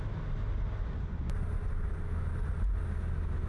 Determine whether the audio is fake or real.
real